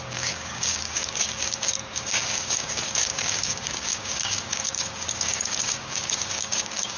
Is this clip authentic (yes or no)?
no